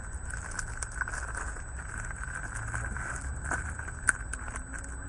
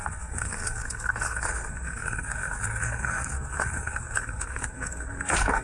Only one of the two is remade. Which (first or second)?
second